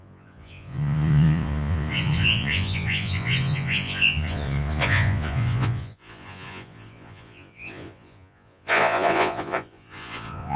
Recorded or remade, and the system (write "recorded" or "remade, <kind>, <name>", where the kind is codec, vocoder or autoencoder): remade, vocoder, Vocos